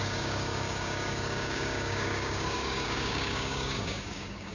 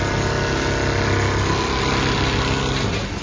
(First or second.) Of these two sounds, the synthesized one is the first